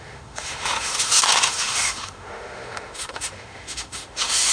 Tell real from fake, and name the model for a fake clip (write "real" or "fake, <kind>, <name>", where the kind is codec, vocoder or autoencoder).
fake, autoencoder, DAC-VAE